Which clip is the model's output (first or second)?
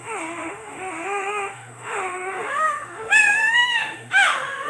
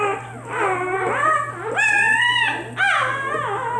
first